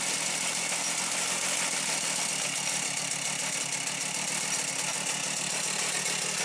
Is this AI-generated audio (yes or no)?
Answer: no